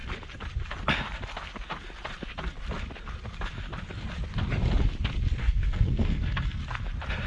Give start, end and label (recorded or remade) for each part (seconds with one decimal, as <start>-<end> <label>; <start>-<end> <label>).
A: 0.0-5.4 recorded; 5.4-6.6 remade; 6.6-7.3 recorded